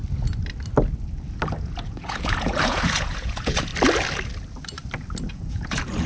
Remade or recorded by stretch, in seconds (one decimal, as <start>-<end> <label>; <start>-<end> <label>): 0.0-1.6 recorded; 1.6-3.7 remade; 3.7-5.3 recorded; 5.3-6.1 remade